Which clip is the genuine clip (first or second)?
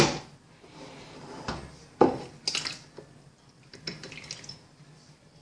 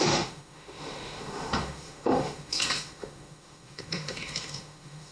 first